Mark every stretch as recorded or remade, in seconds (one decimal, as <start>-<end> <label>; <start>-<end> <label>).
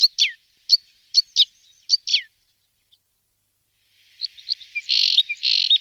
0.0-2.1 recorded; 2.1-5.2 remade; 5.2-5.8 recorded